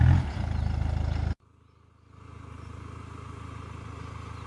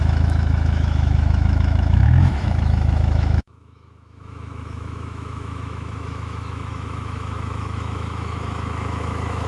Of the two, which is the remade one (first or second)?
second